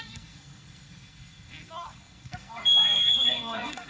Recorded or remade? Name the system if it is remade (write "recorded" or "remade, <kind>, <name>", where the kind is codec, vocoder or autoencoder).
remade, codec, SNAC